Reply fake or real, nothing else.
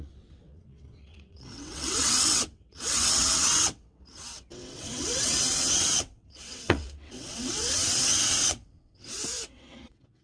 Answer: fake